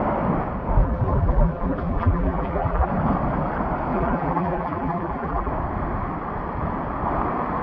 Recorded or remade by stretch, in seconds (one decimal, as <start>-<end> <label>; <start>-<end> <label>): 0.0-0.8 recorded; 0.8-2.9 remade; 2.9-3.9 recorded; 3.9-5.5 remade; 5.5-7.6 recorded